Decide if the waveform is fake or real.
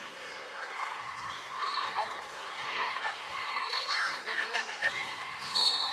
fake